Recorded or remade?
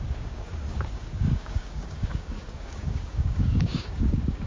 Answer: remade